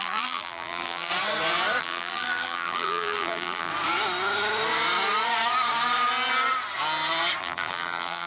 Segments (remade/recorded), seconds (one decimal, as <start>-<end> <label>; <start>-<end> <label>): 0.0-1.1 remade; 1.1-1.8 recorded; 1.8-3.7 remade; 3.7-7.4 recorded; 7.4-8.3 remade